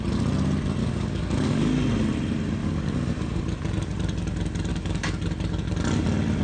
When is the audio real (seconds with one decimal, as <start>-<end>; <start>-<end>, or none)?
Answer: 0.0-0.8; 1.7-2.6; 3.4-4.7; 5.2-6.4